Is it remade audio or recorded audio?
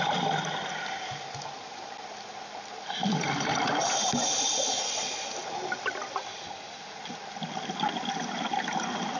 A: recorded